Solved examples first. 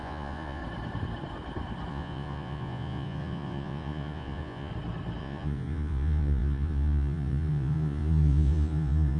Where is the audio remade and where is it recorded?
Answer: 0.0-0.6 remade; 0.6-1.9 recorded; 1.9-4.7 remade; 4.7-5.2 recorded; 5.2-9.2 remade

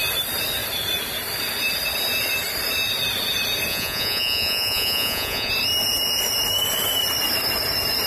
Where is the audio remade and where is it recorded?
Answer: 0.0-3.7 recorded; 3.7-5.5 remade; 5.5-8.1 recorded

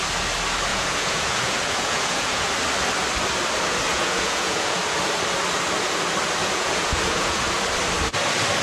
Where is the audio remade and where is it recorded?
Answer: 0.0-0.7 recorded; 0.7-2.5 remade; 2.5-3.9 recorded; 3.9-4.8 remade; 4.8-6.4 recorded; 6.4-7.4 remade; 7.4-8.6 recorded

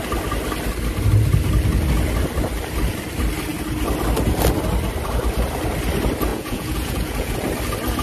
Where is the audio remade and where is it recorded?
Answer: 0.0-6.3 recorded; 6.3-7.4 remade; 7.4-8.0 recorded

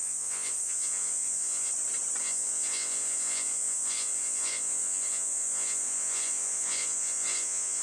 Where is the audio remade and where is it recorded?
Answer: 0.0-1.7 remade; 1.7-2.2 recorded; 2.2-7.8 remade

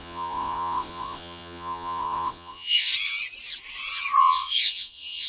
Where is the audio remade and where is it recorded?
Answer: 0.0-2.9 remade; 2.9-4.2 recorded; 4.2-5.3 remade